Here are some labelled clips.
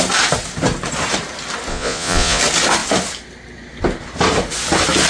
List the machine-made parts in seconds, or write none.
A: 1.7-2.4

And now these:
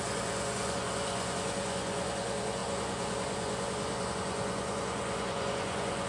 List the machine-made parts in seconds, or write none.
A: 0.0-6.1

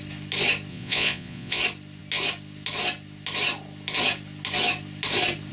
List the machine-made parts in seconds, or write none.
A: 0.7-1.6

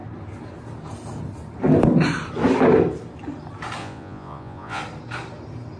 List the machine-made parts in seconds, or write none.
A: 3.8-4.8

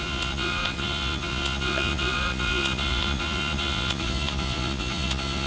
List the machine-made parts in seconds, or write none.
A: 0.0-5.5

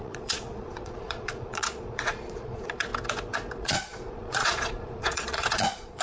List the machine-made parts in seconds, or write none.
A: 0.0-2.9; 3.5-6.0

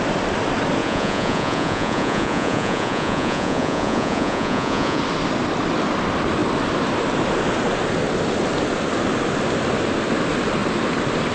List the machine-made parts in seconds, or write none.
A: 0.8-5.0

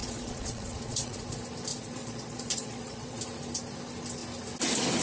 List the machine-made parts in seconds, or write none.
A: 0.0-1.2; 1.7-3.2